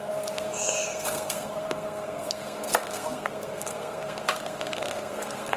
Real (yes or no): no